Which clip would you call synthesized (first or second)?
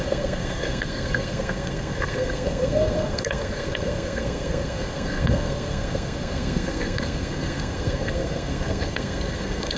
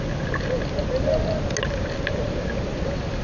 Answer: first